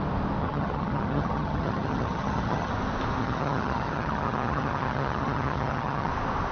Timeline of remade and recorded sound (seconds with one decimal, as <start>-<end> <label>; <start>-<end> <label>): 0.0-0.4 recorded; 0.4-2.7 remade; 2.7-3.2 recorded; 3.2-6.1 remade; 6.1-6.5 recorded